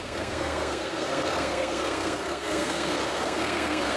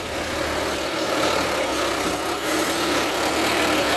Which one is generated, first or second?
first